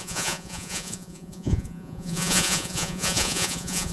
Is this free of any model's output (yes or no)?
no